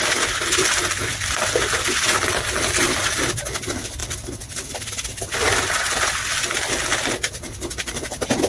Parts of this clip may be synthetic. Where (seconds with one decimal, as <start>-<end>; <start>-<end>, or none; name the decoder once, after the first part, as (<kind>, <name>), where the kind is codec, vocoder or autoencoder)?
none